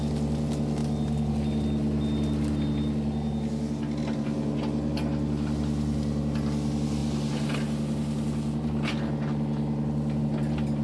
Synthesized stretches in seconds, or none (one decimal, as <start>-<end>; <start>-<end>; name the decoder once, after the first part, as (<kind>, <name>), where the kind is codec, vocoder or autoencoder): none